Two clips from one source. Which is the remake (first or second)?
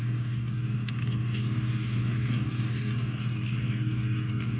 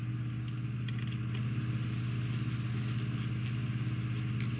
first